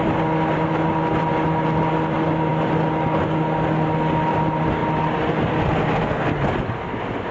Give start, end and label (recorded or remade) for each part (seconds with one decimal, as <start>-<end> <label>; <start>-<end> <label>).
0.0-7.3 recorded